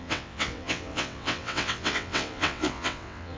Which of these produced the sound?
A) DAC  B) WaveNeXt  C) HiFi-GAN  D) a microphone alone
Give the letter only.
B